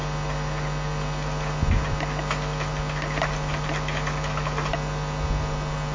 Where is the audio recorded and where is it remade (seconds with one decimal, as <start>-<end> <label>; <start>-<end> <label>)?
0.0-5.9 recorded